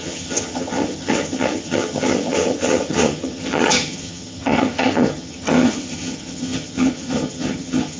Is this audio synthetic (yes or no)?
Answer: yes